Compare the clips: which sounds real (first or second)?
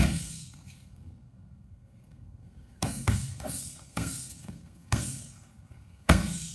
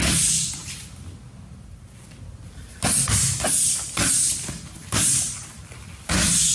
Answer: second